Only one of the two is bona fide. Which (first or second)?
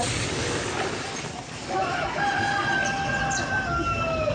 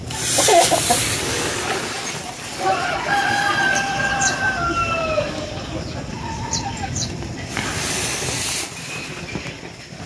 first